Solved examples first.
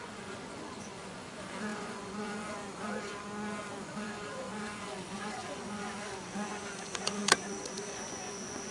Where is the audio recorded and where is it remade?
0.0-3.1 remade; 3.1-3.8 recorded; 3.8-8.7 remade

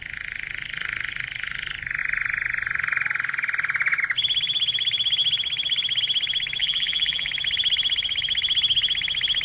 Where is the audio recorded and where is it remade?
0.0-6.6 recorded; 6.6-7.3 remade; 7.3-9.4 recorded

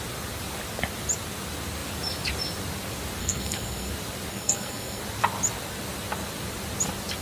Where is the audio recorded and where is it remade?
0.0-3.2 recorded; 3.2-3.9 remade; 3.9-4.3 recorded; 4.3-5.0 remade; 5.0-7.2 recorded

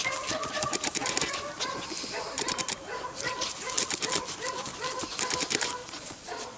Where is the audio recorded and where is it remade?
0.0-5.8 recorded; 5.8-6.6 remade